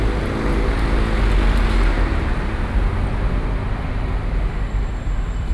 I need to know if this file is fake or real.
real